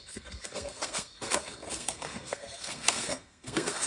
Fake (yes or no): yes